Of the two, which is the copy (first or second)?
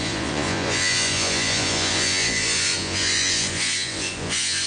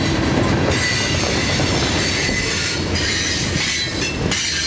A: first